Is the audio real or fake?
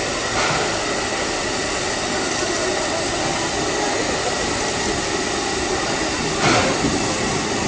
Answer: real